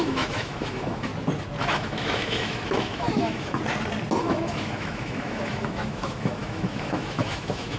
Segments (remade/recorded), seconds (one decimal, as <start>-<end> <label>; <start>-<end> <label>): 0.0-1.1 remade; 1.1-1.6 recorded; 1.6-3.6 remade; 3.6-4.2 recorded; 4.2-7.8 remade